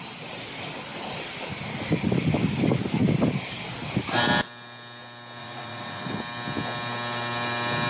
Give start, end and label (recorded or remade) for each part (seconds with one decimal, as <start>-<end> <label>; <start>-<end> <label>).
0.0-5.4 recorded; 5.4-6.2 remade; 6.2-7.9 recorded